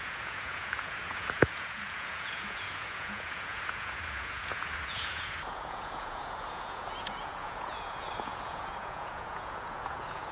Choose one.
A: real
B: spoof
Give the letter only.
B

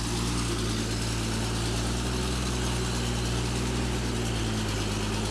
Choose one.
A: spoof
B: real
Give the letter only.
B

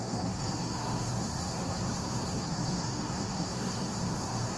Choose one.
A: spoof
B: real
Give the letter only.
A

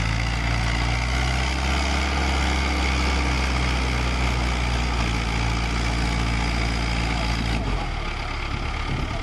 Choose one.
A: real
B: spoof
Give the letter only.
A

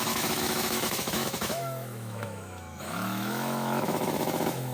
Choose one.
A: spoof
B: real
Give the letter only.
A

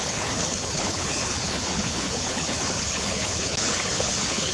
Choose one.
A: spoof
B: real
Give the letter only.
A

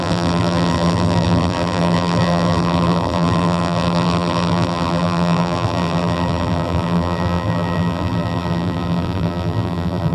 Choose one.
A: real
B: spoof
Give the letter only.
B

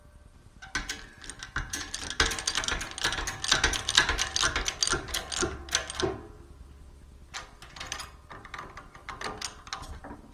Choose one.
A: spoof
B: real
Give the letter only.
B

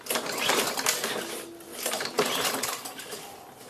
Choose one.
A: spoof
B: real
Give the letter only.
B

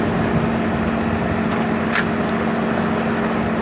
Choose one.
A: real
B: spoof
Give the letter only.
A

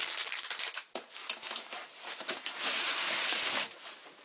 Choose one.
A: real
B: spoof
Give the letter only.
A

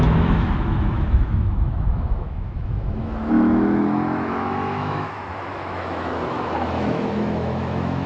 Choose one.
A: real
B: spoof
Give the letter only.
B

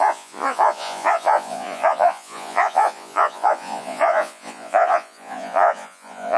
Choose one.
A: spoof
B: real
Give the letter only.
A